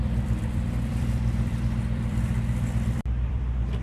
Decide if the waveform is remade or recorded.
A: remade